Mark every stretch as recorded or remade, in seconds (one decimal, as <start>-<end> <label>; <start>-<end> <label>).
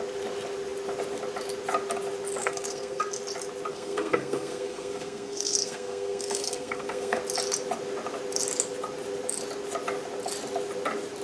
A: 0.0-2.4 recorded; 2.4-3.0 remade; 3.0-3.7 recorded; 3.7-7.2 remade; 7.2-11.2 recorded